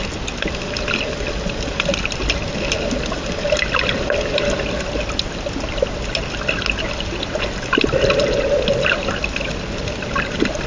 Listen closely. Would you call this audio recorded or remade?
recorded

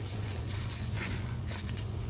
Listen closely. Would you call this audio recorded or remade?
remade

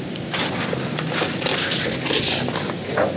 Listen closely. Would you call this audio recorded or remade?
recorded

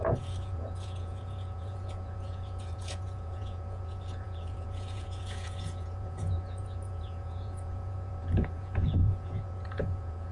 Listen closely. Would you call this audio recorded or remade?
remade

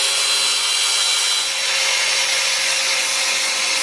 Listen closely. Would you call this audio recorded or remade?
remade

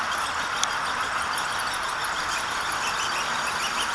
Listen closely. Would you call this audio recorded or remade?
recorded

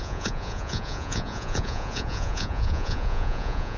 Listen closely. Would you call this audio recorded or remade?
remade